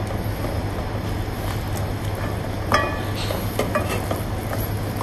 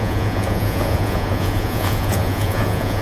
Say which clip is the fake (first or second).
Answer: second